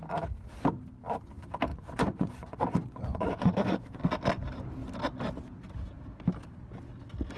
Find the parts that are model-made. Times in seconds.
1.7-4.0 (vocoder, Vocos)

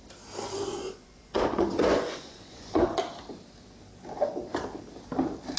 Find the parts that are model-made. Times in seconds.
0.7-3.0 (vocoder, Vocos)

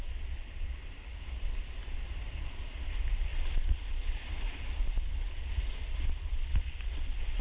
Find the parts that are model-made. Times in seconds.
none

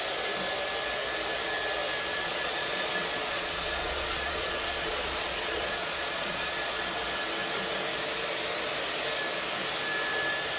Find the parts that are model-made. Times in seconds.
2.1-6.9 (vocoder, Vocos)

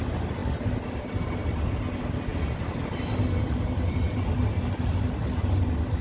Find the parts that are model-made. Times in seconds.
none

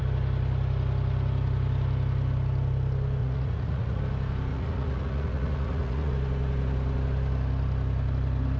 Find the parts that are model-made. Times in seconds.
3.2-4.0 (vocoder, Vocos); 4.5-6.1

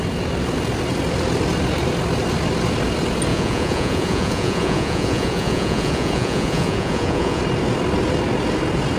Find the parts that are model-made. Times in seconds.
3.3-7.4 (vocoder, Vocos)

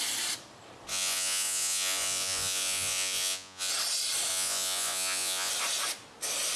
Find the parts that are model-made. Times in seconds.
0.9-3.7 (vocoder, Vocos); 4.3-5.5